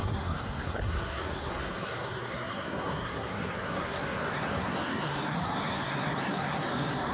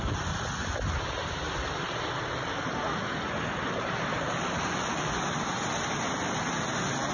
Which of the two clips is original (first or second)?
second